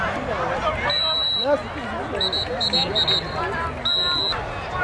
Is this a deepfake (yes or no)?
no